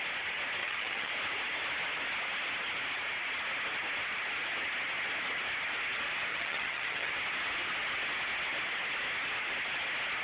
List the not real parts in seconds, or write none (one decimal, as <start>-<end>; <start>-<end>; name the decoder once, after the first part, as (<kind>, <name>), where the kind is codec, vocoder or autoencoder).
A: 0.6-1.1 (vocoder, HiFi-GAN); 6.3-7.1